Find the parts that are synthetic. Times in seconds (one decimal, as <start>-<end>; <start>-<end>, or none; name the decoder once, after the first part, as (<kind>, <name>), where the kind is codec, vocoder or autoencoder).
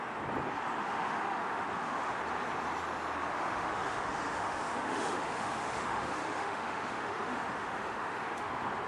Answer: 0.8-2.2 (autoencoder, DAC-VAE); 3.3-8.5